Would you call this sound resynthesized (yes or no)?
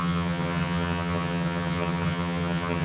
yes